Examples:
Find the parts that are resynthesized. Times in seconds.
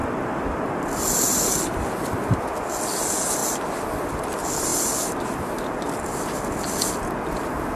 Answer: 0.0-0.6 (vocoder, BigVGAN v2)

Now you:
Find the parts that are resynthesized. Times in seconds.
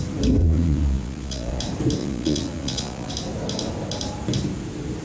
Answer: 0.4-1.6 (vocoder, Vocos); 2.0-3.1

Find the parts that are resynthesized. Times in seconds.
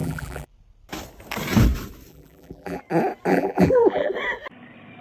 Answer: 0.0-0.5 (vocoder, BigVGAN v2); 2.1-2.8; 3.3-4.1